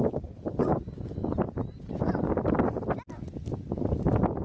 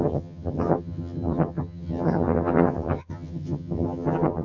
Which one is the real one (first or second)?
first